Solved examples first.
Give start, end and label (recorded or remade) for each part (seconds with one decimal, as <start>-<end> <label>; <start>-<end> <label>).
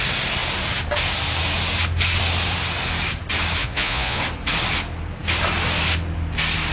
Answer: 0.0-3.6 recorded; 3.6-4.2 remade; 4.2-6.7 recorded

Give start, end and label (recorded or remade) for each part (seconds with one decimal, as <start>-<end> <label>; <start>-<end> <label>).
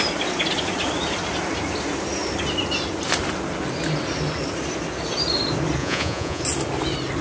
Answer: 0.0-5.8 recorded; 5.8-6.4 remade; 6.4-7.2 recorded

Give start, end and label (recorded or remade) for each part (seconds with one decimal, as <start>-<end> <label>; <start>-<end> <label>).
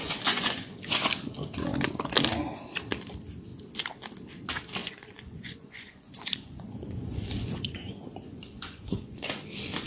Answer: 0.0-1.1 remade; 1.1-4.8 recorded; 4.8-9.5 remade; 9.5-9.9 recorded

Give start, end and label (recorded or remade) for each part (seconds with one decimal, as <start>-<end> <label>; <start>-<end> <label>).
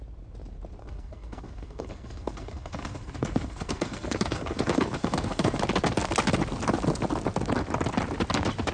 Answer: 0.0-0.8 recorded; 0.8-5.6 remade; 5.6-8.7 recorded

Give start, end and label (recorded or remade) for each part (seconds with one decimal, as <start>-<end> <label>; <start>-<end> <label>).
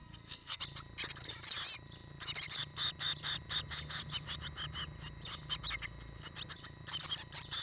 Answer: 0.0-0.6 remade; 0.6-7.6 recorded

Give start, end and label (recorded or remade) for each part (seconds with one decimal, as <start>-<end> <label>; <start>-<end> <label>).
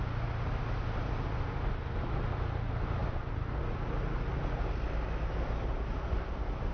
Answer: 0.0-6.7 recorded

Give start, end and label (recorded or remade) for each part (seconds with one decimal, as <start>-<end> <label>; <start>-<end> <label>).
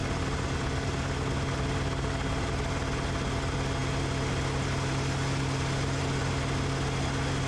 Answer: 0.0-7.5 recorded